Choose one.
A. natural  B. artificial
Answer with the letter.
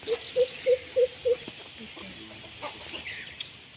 A